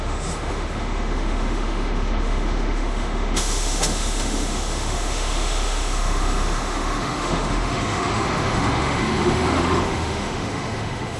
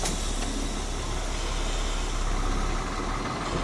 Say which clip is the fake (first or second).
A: first